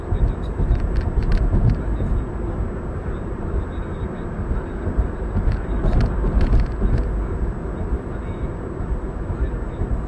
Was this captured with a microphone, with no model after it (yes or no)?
yes